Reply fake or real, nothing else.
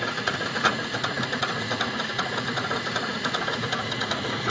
fake